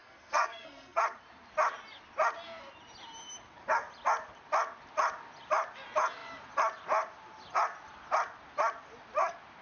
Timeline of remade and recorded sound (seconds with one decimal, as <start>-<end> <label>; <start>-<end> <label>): 0.0-1.0 remade; 1.0-9.6 recorded